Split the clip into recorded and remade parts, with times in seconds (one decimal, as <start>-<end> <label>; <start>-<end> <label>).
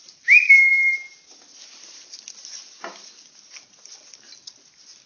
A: 0.0-5.1 recorded